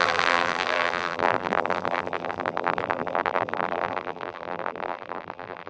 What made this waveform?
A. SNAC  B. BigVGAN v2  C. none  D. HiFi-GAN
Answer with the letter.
B